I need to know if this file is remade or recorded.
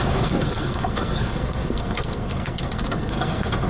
remade